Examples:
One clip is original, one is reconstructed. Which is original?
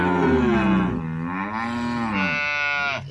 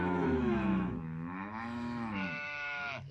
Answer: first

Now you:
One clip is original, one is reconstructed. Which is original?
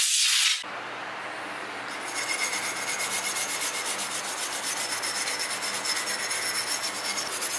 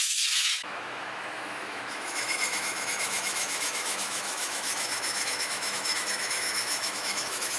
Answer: first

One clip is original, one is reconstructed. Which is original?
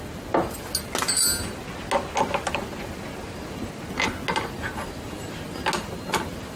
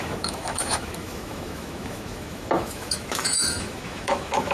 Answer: first